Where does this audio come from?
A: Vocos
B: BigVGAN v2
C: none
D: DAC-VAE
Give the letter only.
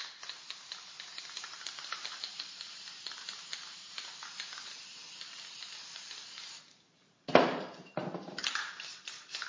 B